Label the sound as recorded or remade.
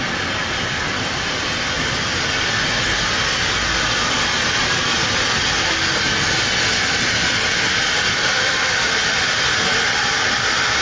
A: recorded